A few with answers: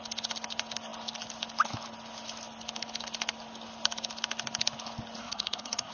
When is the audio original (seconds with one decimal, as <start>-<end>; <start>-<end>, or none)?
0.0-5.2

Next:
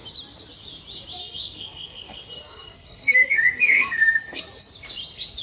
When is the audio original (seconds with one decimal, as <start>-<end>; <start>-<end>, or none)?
0.0-1.2; 4.4-5.4

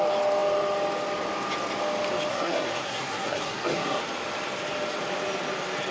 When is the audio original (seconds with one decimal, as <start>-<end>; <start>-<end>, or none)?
0.0-2.3; 4.0-5.9

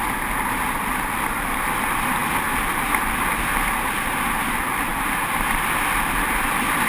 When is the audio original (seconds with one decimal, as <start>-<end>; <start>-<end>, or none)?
0.0-6.9